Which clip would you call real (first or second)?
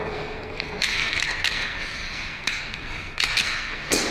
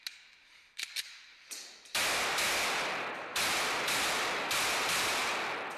second